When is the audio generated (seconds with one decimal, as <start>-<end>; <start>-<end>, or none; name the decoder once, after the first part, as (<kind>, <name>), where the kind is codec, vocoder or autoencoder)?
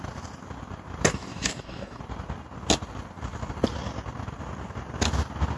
1.1-2.0 (codec, DAC)